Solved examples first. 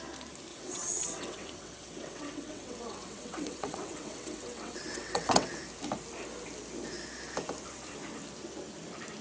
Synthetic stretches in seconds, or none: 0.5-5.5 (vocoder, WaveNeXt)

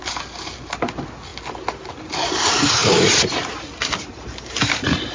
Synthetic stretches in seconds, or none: none

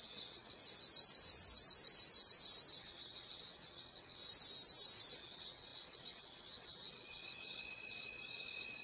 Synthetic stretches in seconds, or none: 0.0-0.6 (vocoder, WaveNeXt); 2.8-4.2; 5.1-8.8

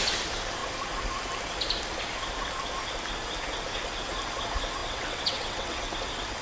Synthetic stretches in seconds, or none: 4.8-5.8 (vocoder, WaveNeXt)

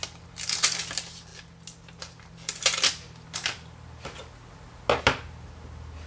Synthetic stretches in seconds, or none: none

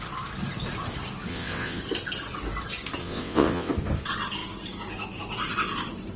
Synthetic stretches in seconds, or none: 1.3-1.8 (vocoder, WaveNeXt); 3.0-3.7

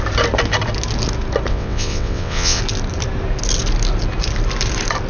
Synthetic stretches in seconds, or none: 1.5-2.6 (vocoder, WaveNeXt)